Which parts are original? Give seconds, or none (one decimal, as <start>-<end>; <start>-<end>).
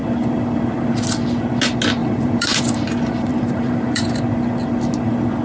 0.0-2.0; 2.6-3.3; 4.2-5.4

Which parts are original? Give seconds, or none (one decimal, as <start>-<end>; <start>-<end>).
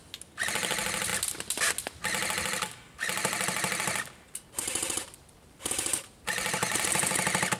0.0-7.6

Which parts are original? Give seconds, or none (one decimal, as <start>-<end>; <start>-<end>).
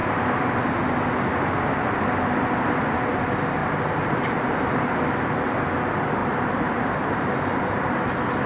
0.0-3.6; 5.0-6.2; 8.1-8.5